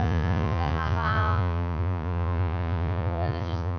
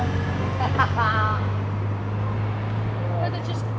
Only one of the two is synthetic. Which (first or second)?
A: first